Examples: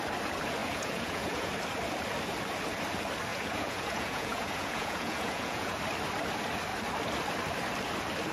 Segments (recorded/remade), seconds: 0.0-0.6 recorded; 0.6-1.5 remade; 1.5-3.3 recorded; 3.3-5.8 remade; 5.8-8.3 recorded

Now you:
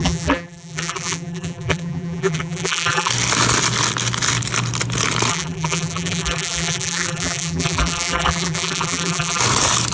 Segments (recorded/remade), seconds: 0.0-3.1 remade; 3.1-5.3 recorded; 5.3-9.4 remade; 9.4-9.9 recorded